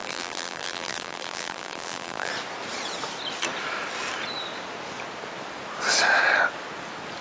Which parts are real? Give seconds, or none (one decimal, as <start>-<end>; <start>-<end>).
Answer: 2.3-7.2